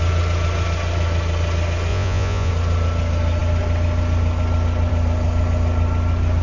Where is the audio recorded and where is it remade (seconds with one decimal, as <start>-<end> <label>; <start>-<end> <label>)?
0.0-1.9 recorded; 1.9-2.5 remade; 2.5-6.4 recorded